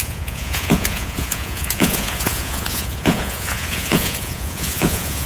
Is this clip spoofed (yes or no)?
yes